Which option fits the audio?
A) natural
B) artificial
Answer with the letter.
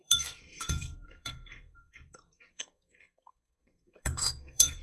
B